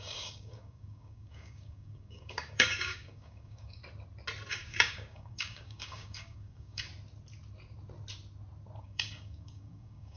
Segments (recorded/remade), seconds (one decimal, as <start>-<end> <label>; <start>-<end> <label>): 0.0-3.8 remade; 3.8-4.5 recorded; 4.5-6.9 remade; 6.9-8.8 recorded; 8.8-10.2 remade